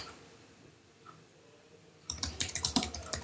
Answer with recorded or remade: remade